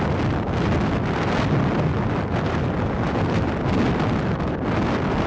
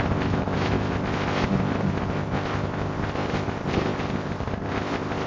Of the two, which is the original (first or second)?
first